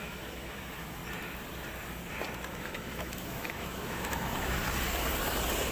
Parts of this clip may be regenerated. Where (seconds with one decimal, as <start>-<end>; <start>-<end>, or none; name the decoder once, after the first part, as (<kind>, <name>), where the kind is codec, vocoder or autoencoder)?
0.0-1.0 (autoencoder, DAC-VAE); 2.5-4.6